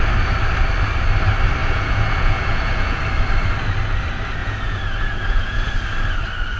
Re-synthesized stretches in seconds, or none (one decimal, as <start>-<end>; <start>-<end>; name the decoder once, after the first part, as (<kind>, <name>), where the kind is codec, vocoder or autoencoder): 1.6-3.0 (vocoder, Vocos); 4.4-5.7